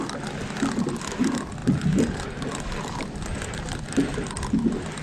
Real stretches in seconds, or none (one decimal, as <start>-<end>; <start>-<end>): 0.0-5.0